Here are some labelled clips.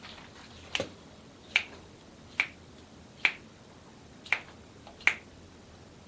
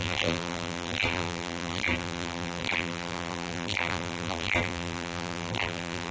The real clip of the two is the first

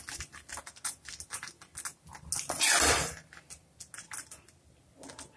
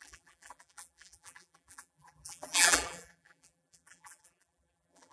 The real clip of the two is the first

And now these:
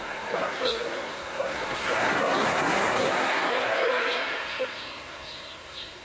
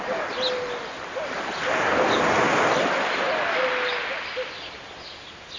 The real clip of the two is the second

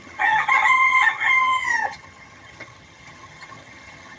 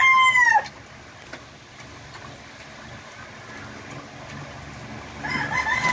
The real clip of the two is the second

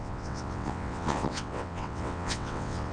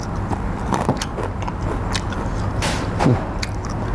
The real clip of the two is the second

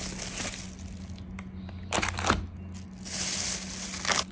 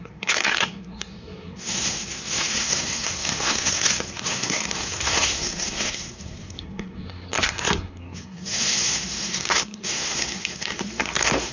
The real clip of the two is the first